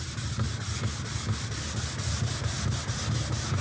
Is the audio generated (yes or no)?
no